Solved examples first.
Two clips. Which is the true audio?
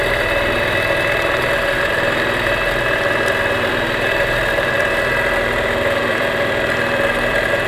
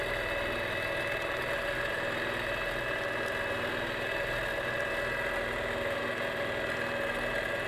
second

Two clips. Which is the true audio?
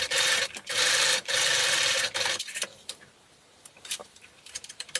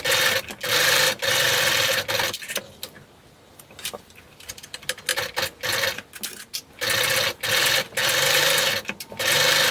second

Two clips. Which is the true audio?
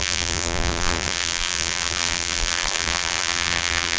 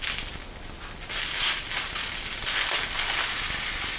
second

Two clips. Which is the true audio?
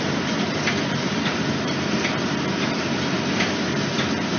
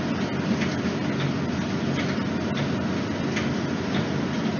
second